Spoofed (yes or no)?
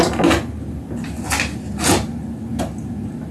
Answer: no